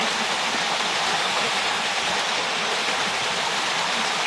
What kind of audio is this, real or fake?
real